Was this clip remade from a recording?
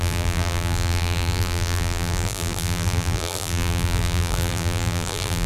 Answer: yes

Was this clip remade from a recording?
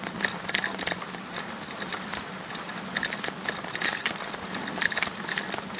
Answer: no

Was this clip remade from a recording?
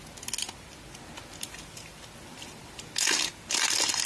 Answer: no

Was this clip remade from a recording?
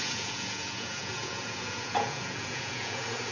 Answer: yes